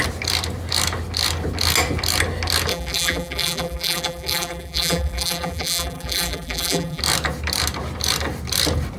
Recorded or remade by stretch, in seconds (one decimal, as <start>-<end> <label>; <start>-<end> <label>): 0.0-2.7 recorded; 2.7-7.0 remade; 7.0-9.0 recorded